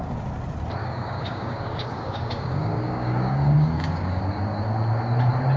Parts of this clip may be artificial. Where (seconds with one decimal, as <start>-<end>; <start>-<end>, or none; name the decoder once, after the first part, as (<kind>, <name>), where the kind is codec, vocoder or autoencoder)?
0.8-4.2 (codec, DAC)